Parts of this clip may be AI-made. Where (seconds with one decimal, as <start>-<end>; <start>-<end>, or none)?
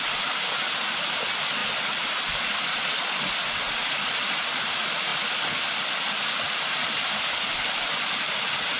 none